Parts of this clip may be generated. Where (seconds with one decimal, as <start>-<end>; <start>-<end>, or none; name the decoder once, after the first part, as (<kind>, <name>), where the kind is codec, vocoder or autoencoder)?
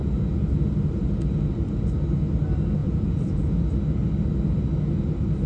2.8-3.6 (vocoder, Vocos)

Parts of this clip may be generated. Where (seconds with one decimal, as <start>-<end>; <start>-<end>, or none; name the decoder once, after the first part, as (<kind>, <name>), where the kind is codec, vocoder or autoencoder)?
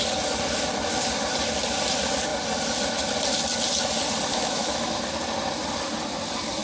4.3-5.0 (autoencoder, DAC-VAE)